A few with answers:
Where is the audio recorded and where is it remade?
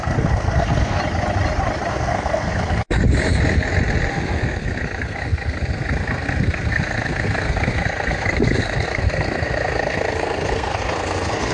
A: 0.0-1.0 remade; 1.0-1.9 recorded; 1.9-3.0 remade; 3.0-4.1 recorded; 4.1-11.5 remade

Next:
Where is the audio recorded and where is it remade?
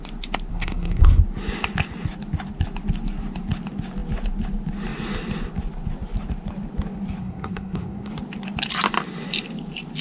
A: 0.0-0.5 recorded; 0.5-1.2 remade; 1.2-7.2 recorded; 7.2-8.1 remade; 8.1-10.0 recorded